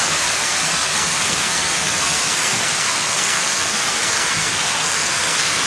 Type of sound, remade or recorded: remade